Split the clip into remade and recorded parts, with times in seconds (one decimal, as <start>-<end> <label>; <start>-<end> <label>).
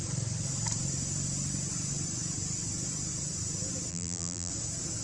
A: 0.0-3.9 recorded; 3.9-4.5 remade; 4.5-5.0 recorded